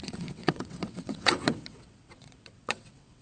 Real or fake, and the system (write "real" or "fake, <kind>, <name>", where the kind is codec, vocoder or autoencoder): fake, vocoder, WaveNeXt